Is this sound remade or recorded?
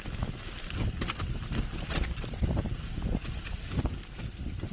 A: recorded